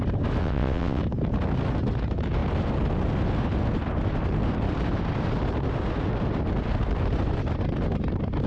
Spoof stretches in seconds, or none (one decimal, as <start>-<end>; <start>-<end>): 0.4-1.0